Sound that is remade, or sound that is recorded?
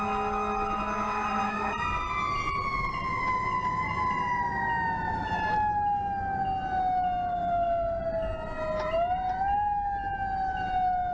recorded